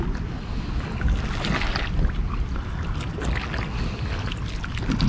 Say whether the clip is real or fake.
real